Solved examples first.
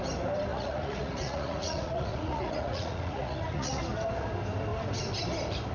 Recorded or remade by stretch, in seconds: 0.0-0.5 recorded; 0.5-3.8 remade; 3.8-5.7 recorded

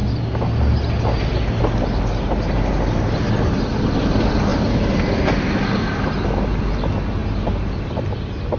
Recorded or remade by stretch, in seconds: 0.0-8.6 recorded